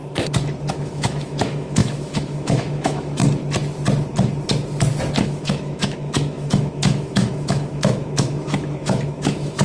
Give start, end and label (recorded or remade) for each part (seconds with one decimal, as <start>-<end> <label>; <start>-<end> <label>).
0.0-0.7 recorded; 0.7-3.2 remade; 3.2-5.2 recorded; 5.2-9.6 remade